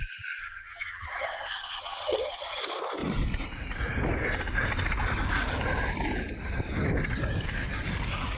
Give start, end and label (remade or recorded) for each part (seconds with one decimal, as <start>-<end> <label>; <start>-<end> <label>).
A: 0.0-0.4 recorded; 0.4-2.6 remade; 2.6-8.4 recorded